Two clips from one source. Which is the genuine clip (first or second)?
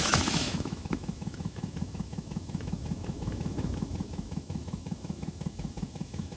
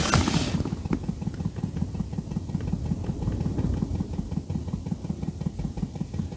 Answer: second